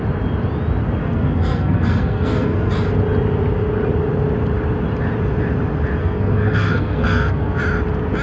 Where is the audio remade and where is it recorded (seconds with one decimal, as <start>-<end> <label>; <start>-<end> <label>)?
0.0-1.0 recorded; 1.0-2.7 remade; 2.7-6.0 recorded; 6.0-7.6 remade; 7.6-8.2 recorded